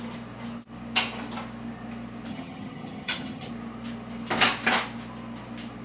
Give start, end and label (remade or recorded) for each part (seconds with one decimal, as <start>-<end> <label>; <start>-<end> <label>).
0.0-2.3 recorded; 2.3-3.5 remade; 3.5-5.8 recorded